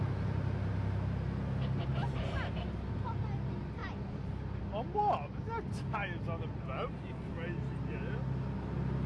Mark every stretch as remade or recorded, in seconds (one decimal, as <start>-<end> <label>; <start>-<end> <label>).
0.0-9.1 recorded